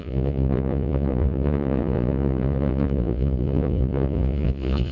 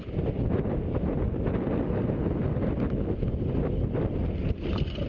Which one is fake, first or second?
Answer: first